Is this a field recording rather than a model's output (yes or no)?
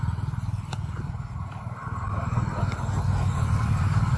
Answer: yes